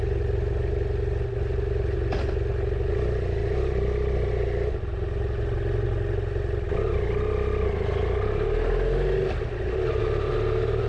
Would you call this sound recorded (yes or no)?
yes